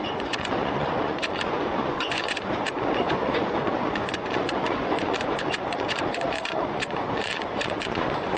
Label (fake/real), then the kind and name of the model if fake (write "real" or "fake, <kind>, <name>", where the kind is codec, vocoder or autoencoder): fake, vocoder, Vocos